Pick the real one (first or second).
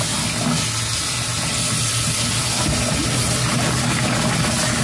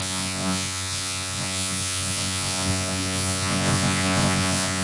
first